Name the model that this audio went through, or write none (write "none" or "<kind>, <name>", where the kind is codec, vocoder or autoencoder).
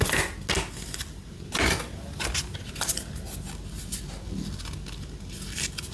none